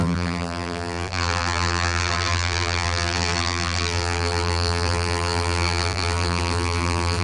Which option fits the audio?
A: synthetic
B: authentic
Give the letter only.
A